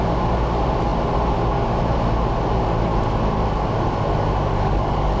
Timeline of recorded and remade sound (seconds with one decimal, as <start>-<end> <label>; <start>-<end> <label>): 0.0-4.5 recorded; 4.5-5.2 remade